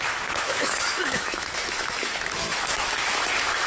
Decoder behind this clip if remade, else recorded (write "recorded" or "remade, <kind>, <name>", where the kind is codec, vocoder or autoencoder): remade, autoencoder, DAC-VAE